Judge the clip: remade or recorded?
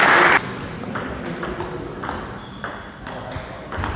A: recorded